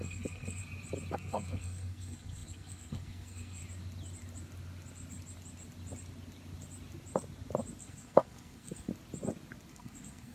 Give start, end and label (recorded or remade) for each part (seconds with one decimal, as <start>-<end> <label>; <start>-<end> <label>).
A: 0.0-0.6 remade; 0.6-1.1 recorded; 1.1-3.6 remade; 3.6-7.8 recorded; 7.8-8.9 remade; 8.9-9.7 recorded; 9.7-10.3 remade